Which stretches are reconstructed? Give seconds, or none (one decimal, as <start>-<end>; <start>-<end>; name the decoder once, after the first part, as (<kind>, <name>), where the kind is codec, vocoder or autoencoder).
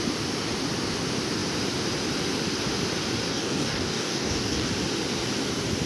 3.3-4.7 (codec, DAC)